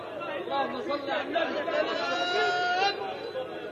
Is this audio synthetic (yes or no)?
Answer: no